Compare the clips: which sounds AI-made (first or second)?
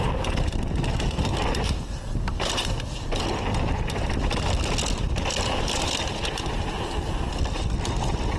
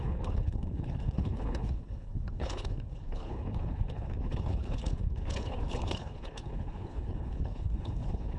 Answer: second